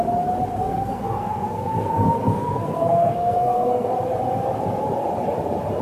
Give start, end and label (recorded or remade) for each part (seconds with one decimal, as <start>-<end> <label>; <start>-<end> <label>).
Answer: 0.0-0.5 recorded; 0.5-3.9 remade; 3.9-5.8 recorded